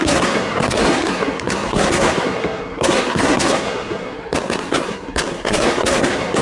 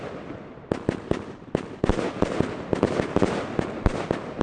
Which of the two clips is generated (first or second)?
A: first